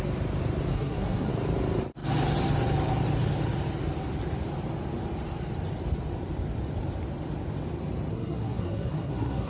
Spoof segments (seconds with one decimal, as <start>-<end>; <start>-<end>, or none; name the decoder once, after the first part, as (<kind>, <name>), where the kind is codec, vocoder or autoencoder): 0.7-1.3 (codec, SNAC); 8.1-9.5